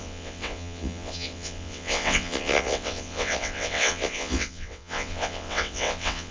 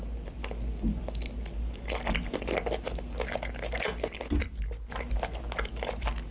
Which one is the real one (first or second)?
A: second